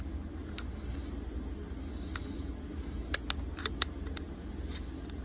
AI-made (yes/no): no